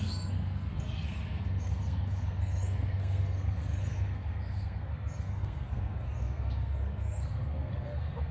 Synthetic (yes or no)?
yes